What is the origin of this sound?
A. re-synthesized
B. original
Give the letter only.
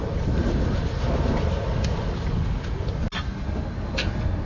B